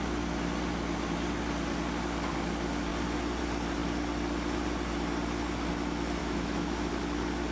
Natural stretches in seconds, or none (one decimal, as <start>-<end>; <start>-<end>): 0.0-6.2; 6.9-7.5